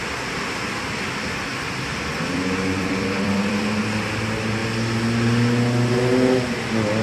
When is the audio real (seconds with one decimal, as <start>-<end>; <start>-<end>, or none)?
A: 0.0-1.5; 3.8-7.0